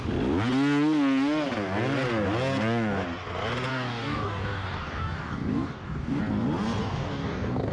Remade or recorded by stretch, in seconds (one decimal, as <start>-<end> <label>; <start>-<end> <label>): 0.0-3.7 recorded; 3.7-6.2 remade; 6.2-6.8 recorded; 6.8-7.7 remade